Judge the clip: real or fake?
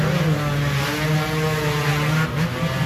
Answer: real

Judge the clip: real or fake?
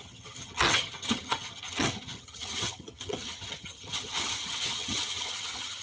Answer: fake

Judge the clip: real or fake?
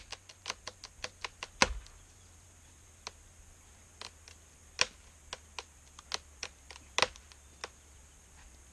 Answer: real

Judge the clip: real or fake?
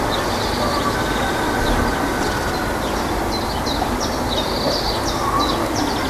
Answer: real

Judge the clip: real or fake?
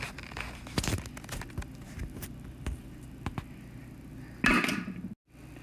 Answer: real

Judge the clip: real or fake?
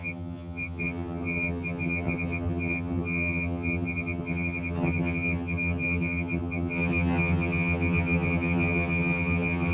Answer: fake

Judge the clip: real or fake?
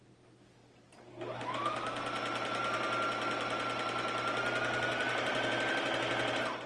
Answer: real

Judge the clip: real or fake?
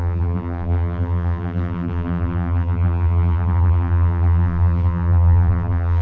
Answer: fake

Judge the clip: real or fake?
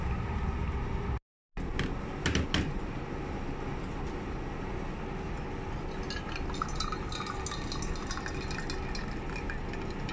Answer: real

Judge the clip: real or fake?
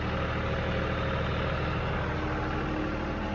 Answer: real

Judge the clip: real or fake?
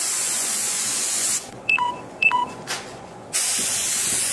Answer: fake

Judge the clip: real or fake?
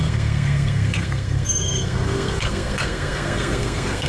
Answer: fake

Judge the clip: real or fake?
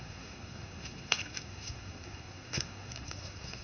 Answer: fake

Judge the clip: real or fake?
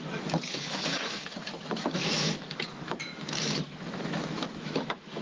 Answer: fake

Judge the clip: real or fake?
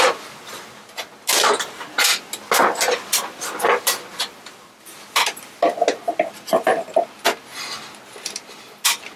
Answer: real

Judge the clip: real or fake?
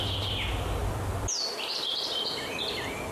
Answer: real